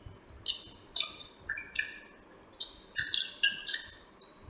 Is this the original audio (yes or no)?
yes